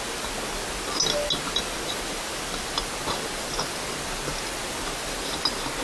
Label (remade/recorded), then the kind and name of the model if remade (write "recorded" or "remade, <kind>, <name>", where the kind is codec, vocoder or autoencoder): recorded